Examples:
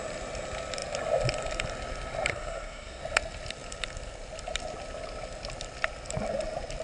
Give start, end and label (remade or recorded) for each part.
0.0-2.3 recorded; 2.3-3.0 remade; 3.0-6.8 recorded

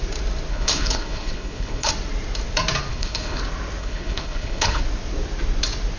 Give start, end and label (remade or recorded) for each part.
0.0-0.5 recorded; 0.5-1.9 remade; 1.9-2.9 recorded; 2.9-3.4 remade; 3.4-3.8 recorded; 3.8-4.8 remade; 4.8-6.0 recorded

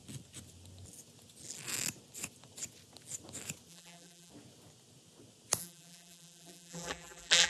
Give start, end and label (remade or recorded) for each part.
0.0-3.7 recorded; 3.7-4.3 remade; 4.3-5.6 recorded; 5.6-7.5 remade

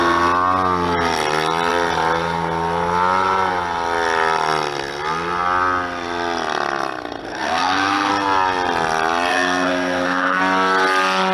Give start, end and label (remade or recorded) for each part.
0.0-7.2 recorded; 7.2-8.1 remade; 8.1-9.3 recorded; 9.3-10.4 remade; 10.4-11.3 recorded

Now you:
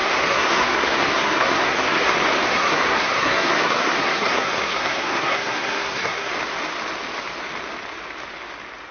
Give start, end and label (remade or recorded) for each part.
0.0-2.1 remade; 2.1-2.5 recorded; 2.5-6.3 remade; 6.3-8.9 recorded